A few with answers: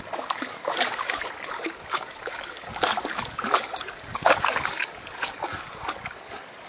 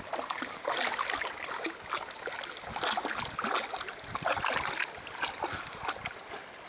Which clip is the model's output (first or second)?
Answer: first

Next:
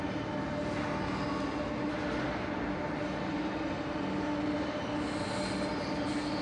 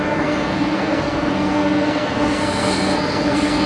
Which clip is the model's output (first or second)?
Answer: second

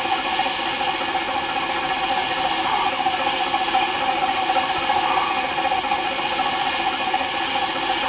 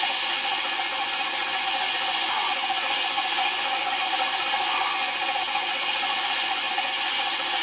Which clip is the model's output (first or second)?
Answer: second